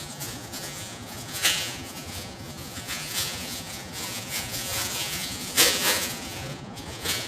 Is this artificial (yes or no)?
yes